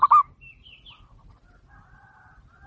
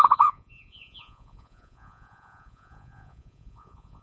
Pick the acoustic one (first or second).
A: first